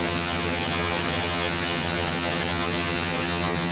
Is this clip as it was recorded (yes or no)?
no